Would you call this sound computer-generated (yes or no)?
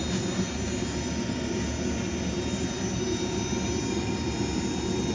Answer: no